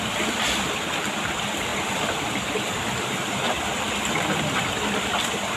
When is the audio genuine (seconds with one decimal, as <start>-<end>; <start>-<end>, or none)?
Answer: 0.0-5.6